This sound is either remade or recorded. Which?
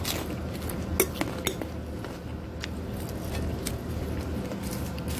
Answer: recorded